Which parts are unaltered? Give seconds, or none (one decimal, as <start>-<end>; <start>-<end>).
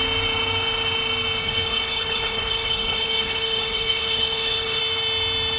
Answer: 0.0-1.4; 4.8-5.6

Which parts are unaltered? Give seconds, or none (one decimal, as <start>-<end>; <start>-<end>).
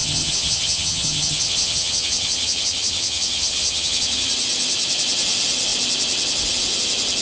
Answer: 4.3-7.2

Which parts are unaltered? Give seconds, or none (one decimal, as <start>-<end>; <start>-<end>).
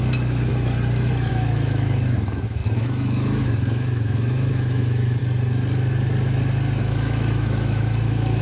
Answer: 0.5-1.3; 5.2-6.8